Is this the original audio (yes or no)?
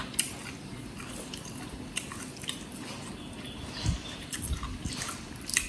yes